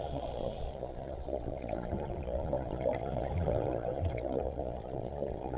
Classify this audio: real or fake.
fake